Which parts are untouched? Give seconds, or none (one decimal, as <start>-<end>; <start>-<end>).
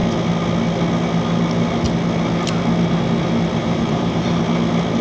0.0-3.6; 4.4-5.0